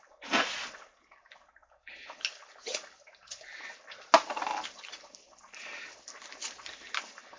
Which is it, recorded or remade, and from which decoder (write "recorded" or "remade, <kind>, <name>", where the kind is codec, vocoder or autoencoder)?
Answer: recorded